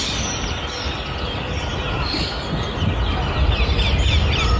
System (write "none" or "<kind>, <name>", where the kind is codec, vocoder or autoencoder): none